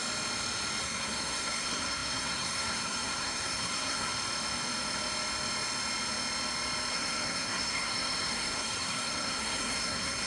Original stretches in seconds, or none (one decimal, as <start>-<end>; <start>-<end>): 0.0-0.8; 4.1-6.9